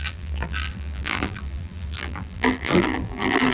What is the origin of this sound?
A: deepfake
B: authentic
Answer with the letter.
A